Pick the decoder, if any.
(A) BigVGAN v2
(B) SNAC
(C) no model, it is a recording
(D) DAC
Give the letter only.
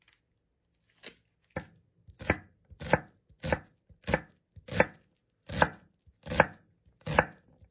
C